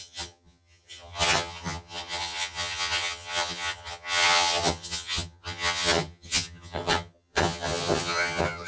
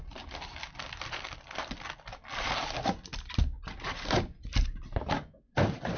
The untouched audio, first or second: second